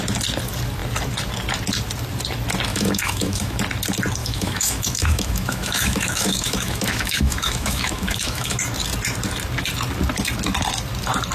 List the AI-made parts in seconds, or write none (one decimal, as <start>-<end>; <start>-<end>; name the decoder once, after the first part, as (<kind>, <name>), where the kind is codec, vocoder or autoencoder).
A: 2.7-3.6 (autoencoder, DAC-VAE); 4.2-8.6